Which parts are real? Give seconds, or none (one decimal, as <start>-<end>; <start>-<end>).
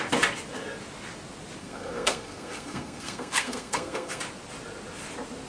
0.0-1.6; 4.2-5.5